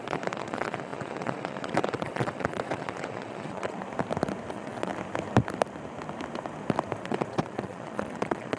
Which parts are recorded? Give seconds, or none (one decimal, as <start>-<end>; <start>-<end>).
3.8-4.5; 4.9-7.0